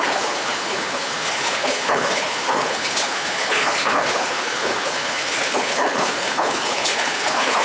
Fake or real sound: fake